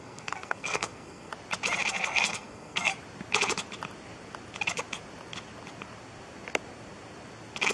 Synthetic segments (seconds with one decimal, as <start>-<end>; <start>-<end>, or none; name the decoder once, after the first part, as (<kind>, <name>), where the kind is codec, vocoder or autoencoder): 0.0-1.3 (codec, SNAC); 1.9-2.9